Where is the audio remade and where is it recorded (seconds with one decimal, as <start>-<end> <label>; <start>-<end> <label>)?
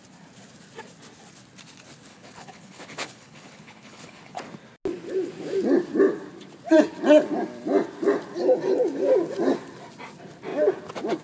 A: 0.0-2.1 recorded; 2.1-4.4 remade; 4.4-11.2 recorded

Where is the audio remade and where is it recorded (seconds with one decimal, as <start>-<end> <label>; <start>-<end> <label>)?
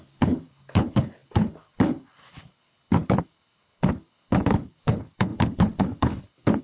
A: 0.0-6.6 remade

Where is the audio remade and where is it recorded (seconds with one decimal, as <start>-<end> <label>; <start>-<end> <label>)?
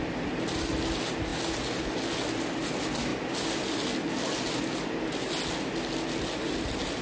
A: 0.0-7.0 recorded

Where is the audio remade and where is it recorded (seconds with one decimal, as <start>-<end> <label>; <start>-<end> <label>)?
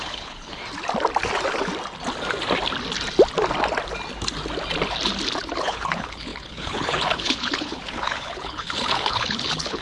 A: 0.0-0.6 remade; 0.6-5.6 recorded; 5.6-9.8 remade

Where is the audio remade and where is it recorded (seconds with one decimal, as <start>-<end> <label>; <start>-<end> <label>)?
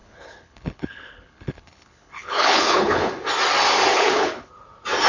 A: 0.0-3.1 remade; 3.1-3.9 recorded; 3.9-4.5 remade; 4.5-5.1 recorded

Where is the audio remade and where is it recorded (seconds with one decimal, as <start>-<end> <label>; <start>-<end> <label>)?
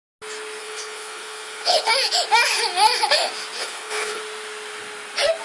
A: 0.0-0.6 recorded; 0.6-1.9 remade; 1.9-3.6 recorded; 3.6-4.2 remade; 4.2-5.4 recorded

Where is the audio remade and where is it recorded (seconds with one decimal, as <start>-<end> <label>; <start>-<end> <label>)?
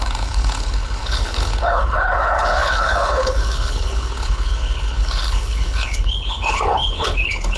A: 0.0-7.6 remade